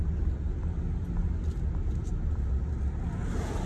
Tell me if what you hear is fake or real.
real